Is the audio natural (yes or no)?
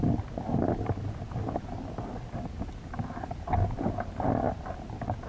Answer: yes